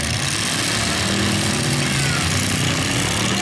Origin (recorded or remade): recorded